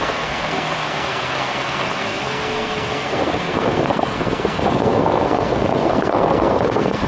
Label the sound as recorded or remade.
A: remade